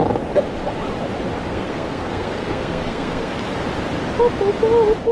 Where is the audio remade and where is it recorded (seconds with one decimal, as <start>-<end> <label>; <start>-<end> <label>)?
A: 0.0-1.5 recorded; 1.5-3.3 remade; 3.3-5.1 recorded